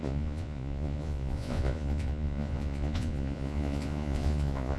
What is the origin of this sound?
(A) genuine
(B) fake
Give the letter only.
B